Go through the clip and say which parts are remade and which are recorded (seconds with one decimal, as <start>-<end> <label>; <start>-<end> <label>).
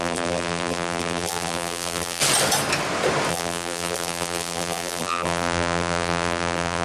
0.0-2.2 remade; 2.2-3.3 recorded; 3.3-6.8 remade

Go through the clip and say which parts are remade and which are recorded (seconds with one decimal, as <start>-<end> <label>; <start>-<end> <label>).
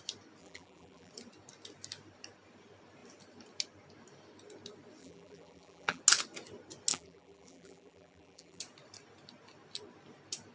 0.0-0.4 recorded; 0.4-1.1 remade; 1.1-5.0 recorded; 5.0-6.0 remade; 6.0-6.9 recorded; 6.9-8.6 remade; 8.6-10.5 recorded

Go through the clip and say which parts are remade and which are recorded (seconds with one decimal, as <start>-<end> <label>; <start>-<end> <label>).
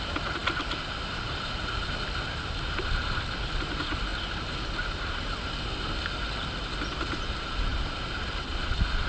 0.0-9.1 recorded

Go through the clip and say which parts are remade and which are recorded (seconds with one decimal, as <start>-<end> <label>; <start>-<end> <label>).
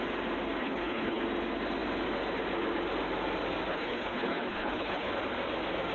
0.0-0.6 recorded; 0.6-1.2 remade; 1.2-3.7 recorded; 3.7-5.1 remade; 5.1-5.9 recorded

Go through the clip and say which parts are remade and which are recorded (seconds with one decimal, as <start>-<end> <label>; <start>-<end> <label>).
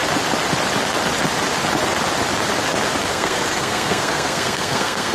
0.0-3.1 recorded; 3.1-5.1 remade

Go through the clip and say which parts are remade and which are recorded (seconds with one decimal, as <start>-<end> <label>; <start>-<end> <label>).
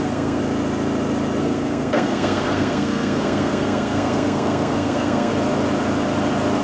0.0-0.4 remade; 0.4-1.4 recorded; 1.4-5.3 remade; 5.3-6.6 recorded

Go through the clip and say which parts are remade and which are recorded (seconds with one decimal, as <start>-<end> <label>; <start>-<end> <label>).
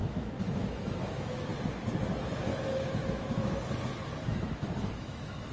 0.0-1.5 remade; 1.5-2.5 recorded; 2.5-3.7 remade; 3.7-4.3 recorded; 4.3-5.5 remade